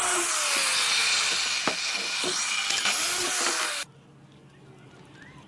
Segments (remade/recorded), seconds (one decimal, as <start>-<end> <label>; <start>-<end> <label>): 0.0-5.5 recorded